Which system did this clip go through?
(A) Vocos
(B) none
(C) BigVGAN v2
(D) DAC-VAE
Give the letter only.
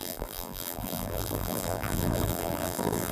C